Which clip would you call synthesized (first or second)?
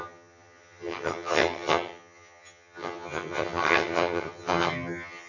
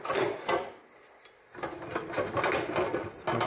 first